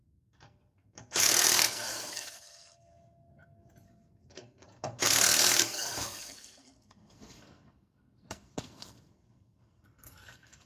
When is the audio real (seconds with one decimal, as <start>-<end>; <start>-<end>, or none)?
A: none